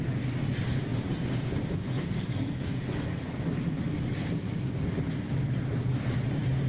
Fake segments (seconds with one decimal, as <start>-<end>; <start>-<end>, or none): none

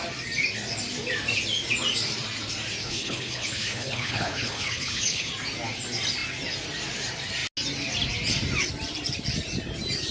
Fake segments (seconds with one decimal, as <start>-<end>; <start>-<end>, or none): 2.8-5.3

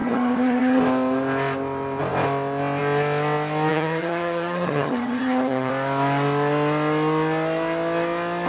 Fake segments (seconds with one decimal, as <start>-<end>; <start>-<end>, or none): 0.0-0.8; 3.7-5.7

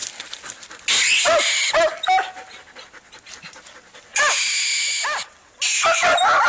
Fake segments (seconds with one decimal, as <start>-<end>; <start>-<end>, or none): none

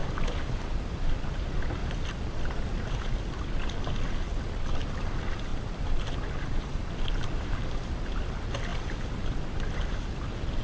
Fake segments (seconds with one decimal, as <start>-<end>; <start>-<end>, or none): 0.0-0.7; 1.8-2.8; 5.5-6.9; 8.7-9.4

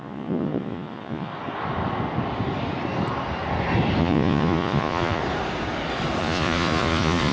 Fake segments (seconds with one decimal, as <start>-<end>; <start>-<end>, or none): 0.0-1.3; 4.0-5.2; 6.2-7.3